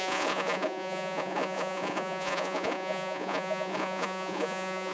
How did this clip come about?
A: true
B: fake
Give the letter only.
B